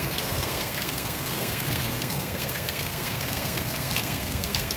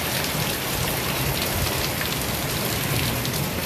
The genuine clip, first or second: second